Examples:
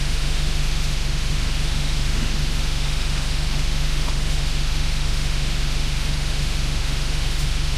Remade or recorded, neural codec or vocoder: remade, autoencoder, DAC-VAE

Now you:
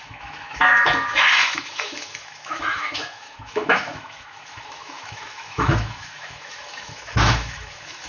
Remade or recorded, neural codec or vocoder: remade, autoencoder, DAC-VAE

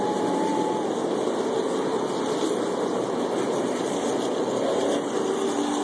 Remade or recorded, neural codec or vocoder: recorded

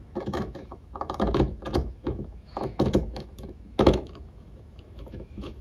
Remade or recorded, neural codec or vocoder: remade, autoencoder, DAC-VAE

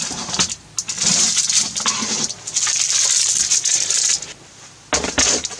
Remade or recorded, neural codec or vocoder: recorded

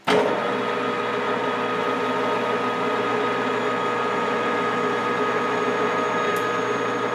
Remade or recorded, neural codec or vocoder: recorded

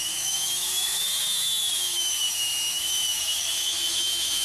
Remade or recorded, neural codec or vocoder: remade, autoencoder, DAC-VAE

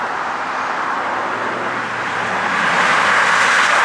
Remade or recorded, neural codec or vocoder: recorded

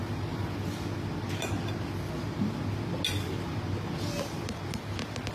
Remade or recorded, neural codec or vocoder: recorded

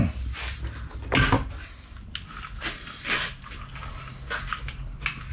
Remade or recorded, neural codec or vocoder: recorded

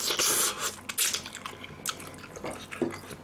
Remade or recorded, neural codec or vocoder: recorded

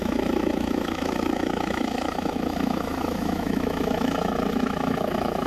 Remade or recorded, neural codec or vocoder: remade, autoencoder, DAC-VAE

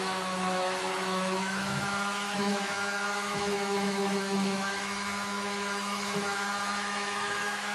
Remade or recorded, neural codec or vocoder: remade, autoencoder, DAC-VAE